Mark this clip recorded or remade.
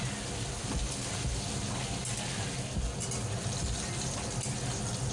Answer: recorded